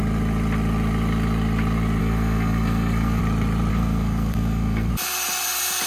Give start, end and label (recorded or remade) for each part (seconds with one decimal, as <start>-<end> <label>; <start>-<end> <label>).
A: 0.0-2.0 recorded; 2.0-3.2 remade; 3.2-3.7 recorded; 3.7-4.9 remade; 4.9-5.9 recorded